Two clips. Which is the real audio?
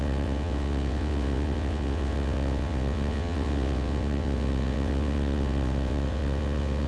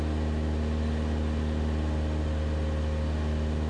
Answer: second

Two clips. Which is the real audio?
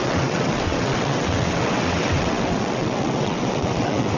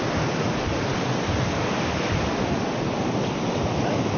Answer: second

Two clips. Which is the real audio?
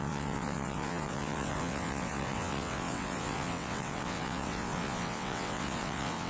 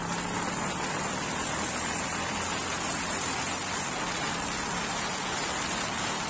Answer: second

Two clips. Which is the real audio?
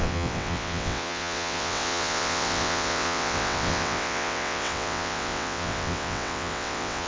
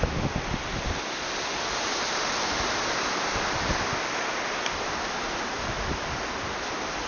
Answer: second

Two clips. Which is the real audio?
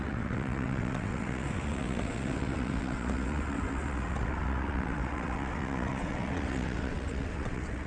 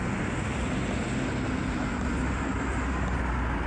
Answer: second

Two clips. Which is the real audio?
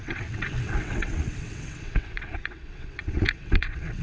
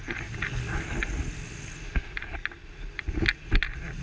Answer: second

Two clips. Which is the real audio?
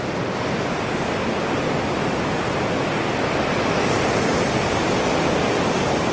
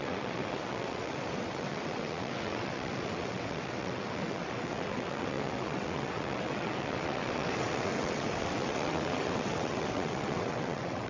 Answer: first